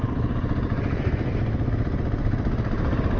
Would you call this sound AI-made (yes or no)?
no